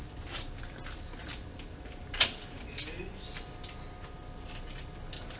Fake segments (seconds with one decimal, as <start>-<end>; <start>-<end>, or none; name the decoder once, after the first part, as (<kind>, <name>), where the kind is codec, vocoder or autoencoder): none